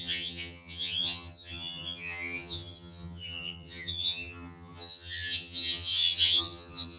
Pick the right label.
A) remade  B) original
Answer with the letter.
A